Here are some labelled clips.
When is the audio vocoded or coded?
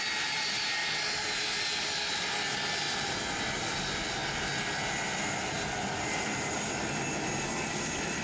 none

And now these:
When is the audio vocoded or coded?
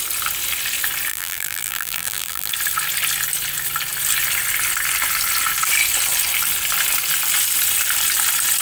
1.1-2.5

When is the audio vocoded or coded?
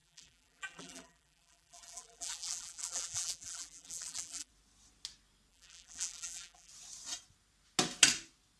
0.0-4.5; 5.5-6.7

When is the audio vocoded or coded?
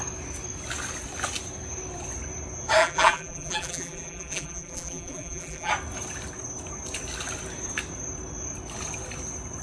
2.8-5.7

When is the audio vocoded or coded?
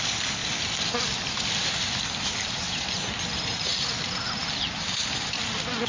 0.4-3.2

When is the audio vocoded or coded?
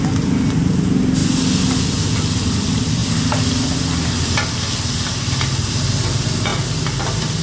none